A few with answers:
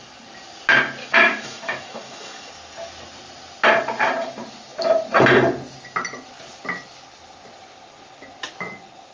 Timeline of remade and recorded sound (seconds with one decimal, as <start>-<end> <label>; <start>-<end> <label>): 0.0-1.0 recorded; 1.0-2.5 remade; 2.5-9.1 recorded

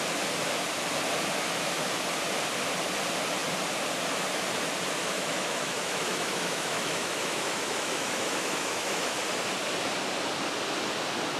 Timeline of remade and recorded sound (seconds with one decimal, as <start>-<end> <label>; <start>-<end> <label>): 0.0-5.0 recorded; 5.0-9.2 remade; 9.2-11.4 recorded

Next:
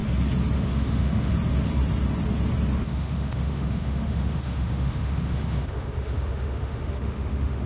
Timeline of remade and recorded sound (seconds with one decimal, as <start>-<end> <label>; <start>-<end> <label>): 0.0-0.6 recorded; 0.6-1.3 remade; 1.3-2.8 recorded; 2.8-7.7 remade

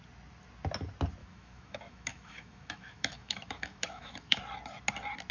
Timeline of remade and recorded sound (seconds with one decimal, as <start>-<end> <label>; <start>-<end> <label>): 0.0-1.2 recorded; 1.2-4.4 remade; 4.4-5.3 recorded

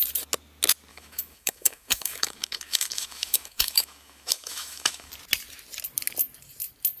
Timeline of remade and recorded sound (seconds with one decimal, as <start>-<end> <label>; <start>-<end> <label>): 0.0-0.9 recorded; 0.9-5.1 remade; 5.1-7.0 recorded

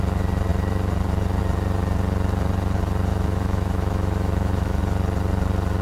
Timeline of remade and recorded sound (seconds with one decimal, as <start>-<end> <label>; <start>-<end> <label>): 0.0-3.1 recorded; 3.1-4.8 remade; 4.8-5.8 recorded

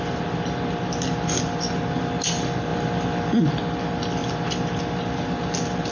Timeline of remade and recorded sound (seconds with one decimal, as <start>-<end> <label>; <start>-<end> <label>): 0.0-5.9 recorded